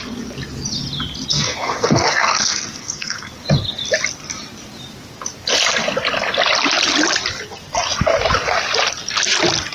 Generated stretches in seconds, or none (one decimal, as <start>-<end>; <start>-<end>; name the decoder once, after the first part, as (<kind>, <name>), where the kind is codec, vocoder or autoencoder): 1.3-3.3 (codec, SNAC)